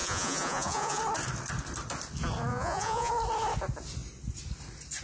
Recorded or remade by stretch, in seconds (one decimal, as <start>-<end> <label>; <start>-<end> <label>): 0.0-1.0 remade; 1.0-2.5 recorded; 2.5-3.1 remade; 3.1-5.0 recorded